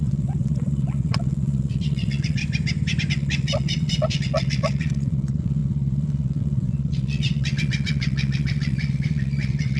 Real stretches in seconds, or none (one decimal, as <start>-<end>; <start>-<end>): 2.4-3.1